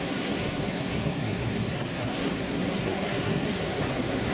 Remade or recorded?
remade